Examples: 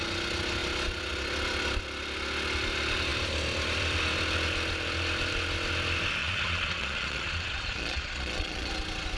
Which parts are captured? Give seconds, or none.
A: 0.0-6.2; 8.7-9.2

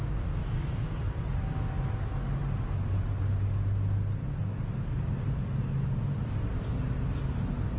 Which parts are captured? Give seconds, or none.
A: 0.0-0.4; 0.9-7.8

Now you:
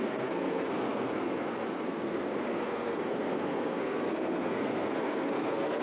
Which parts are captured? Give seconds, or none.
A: none